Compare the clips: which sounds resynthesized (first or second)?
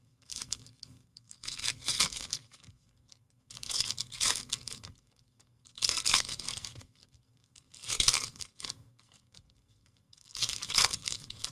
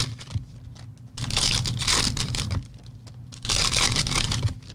first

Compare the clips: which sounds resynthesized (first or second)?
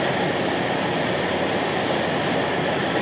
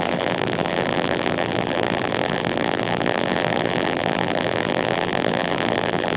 second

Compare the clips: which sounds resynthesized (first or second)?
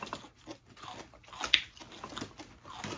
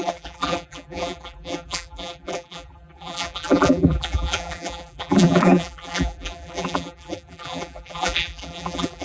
second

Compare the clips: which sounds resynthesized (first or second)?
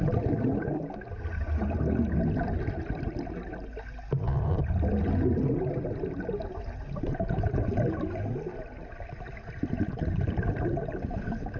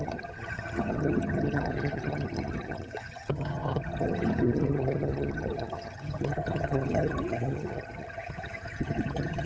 second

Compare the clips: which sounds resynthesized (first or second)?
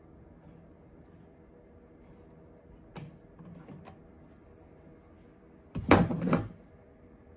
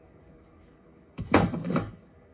second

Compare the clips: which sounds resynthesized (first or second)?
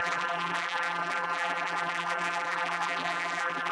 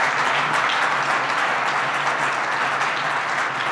first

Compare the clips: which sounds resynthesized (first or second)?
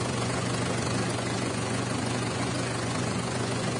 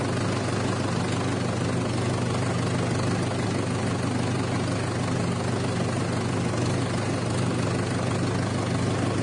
first